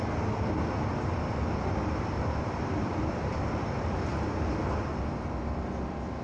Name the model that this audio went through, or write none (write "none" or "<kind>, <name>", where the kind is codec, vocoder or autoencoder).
none